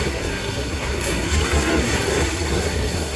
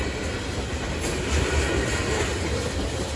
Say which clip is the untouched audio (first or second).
second